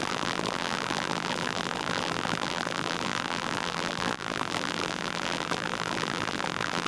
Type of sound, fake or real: fake